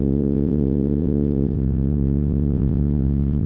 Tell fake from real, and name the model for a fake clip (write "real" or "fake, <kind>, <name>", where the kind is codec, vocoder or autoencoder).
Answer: fake, vocoder, WaveNeXt